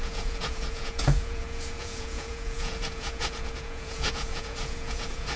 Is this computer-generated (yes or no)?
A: yes